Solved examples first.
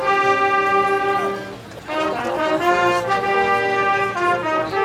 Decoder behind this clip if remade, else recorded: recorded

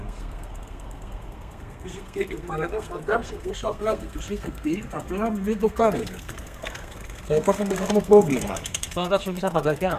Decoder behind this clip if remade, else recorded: remade, codec, SNAC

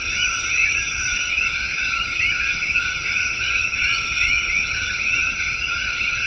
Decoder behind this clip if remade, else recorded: remade, vocoder, HiFi-GAN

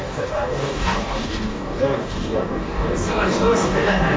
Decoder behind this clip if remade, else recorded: remade, codec, DAC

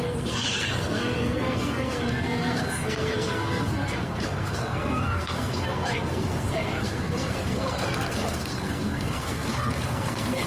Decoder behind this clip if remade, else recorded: remade, codec, SNAC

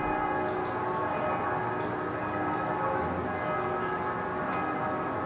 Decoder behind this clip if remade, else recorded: recorded